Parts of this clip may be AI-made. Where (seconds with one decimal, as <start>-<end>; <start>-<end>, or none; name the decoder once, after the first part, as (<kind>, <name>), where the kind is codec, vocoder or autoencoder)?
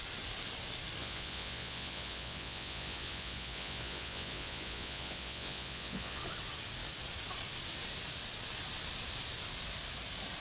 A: 1.0-6.2 (vocoder, Vocos)